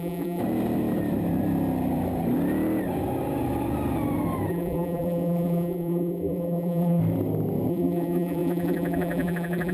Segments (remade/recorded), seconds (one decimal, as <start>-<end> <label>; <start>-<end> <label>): 0.0-0.4 remade; 0.4-4.5 recorded; 4.5-7.0 remade; 7.0-7.7 recorded; 7.7-9.7 remade

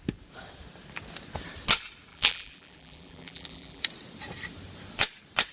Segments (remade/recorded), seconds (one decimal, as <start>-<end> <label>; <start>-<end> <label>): 0.0-2.1 recorded; 2.1-3.8 remade; 3.8-5.5 recorded

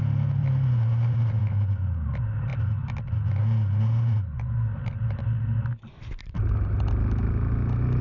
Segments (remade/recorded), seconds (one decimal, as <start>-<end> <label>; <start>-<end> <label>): 0.0-0.4 recorded; 0.4-1.4 remade; 1.4-8.0 recorded

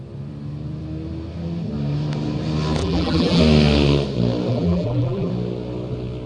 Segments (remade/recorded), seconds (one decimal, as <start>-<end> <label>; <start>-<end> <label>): 0.0-2.8 recorded; 2.8-3.4 remade; 3.4-4.5 recorded; 4.5-5.3 remade; 5.3-6.3 recorded

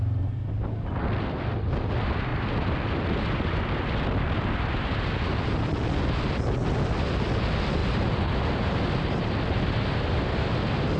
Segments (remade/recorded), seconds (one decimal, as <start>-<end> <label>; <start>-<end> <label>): 0.0-11.0 recorded

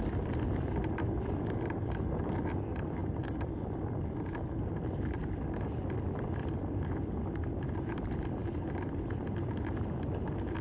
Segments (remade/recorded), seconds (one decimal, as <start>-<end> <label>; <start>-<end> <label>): 0.0-10.6 recorded

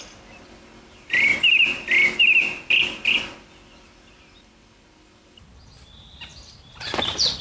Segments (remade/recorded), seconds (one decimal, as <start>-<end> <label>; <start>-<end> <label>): 0.0-1.3 remade; 1.3-4.1 recorded; 4.1-7.4 remade

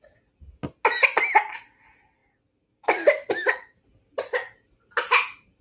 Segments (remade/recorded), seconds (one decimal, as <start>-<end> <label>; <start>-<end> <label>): 0.0-5.6 recorded